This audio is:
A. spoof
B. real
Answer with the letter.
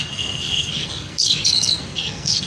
A